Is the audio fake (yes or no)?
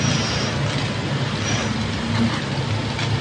no